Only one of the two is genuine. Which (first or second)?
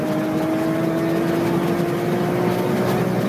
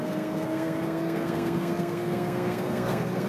first